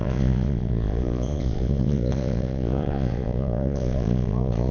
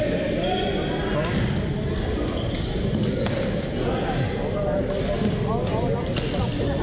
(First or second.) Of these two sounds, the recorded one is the second